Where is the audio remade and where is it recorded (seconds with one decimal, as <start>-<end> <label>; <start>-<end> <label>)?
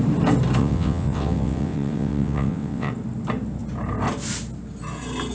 0.0-0.6 recorded; 0.6-2.9 remade; 2.9-5.3 recorded